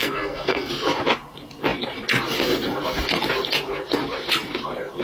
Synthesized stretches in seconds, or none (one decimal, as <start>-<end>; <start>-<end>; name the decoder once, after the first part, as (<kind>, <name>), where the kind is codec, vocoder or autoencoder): 0.0-0.7 (codec, SNAC)